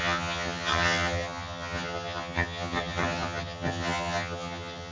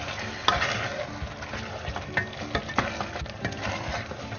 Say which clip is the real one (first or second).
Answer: second